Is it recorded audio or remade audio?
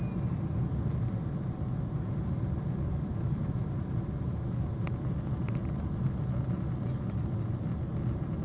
recorded